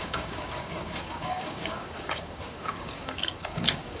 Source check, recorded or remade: remade